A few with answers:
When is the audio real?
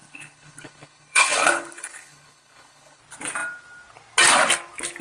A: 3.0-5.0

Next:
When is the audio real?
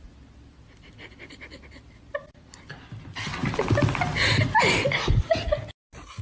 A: 0.0-6.2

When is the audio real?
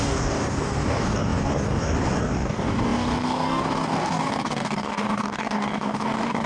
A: none